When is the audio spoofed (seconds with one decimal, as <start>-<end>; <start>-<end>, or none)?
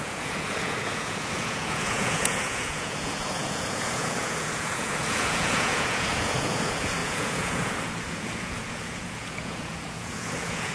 0.0-10.7